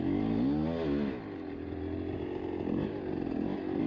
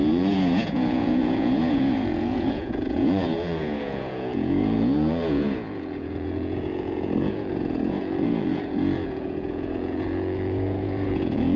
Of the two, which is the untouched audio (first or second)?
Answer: first